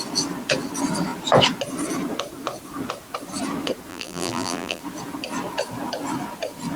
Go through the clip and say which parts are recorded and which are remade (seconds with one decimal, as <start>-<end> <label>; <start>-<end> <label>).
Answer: 0.0-3.9 recorded; 3.9-4.8 remade; 4.8-6.8 recorded